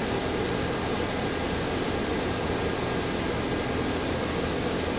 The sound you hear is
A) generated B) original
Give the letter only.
B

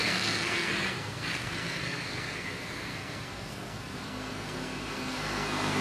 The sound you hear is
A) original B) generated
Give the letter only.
B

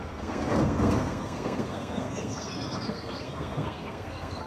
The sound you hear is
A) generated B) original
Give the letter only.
A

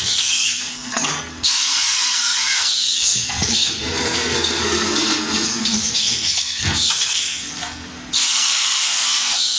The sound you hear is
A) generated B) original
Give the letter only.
A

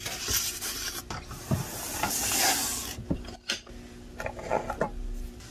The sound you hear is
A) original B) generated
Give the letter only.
A